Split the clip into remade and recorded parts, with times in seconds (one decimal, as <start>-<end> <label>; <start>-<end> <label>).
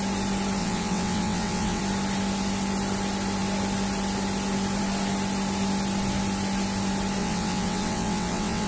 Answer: 0.0-0.6 recorded; 0.6-1.8 remade; 1.8-7.2 recorded; 7.2-8.7 remade